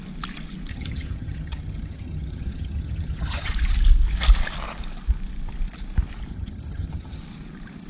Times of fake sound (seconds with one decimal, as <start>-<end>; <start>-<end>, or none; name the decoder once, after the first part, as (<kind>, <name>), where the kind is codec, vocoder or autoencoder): 0.7-3.5 (vocoder, HiFi-GAN); 6.3-7.2

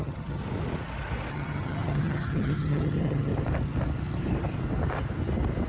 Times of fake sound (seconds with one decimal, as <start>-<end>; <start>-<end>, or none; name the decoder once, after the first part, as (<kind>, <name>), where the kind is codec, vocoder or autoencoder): 0.0-0.4 (vocoder, HiFi-GAN); 1.3-3.3

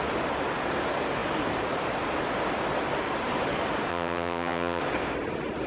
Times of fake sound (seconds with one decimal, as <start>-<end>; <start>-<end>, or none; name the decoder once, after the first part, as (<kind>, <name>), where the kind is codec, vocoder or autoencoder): 3.9-4.8 (vocoder, HiFi-GAN)

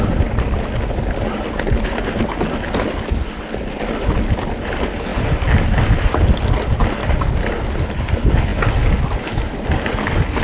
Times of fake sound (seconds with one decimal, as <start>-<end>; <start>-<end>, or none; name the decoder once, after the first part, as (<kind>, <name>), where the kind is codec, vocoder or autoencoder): none

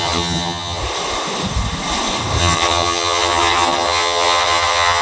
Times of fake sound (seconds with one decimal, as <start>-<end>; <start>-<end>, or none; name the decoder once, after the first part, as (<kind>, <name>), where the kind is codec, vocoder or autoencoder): 0.0-0.8 (vocoder, HiFi-GAN); 2.4-5.0

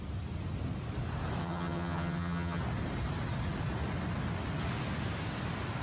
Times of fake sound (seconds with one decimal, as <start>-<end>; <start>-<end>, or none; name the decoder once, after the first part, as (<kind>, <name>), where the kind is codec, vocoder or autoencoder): 1.4-2.6 (vocoder, HiFi-GAN)

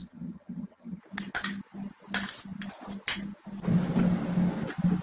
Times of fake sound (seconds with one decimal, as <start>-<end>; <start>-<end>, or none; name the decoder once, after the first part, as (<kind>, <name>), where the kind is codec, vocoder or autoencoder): 0.0-1.0 (vocoder, HiFi-GAN)

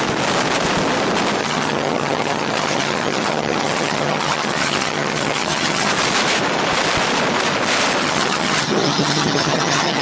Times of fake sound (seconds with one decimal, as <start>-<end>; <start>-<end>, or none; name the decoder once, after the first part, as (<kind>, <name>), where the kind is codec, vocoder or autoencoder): 1.4-5.9 (vocoder, HiFi-GAN); 8.0-10.0